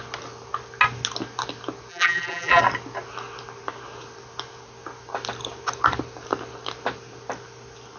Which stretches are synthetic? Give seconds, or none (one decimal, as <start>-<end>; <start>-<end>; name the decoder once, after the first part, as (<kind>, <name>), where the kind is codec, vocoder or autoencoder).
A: 1.9-2.6 (vocoder, BigVGAN v2)